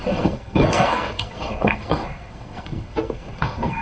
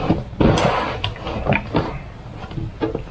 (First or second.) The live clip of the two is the second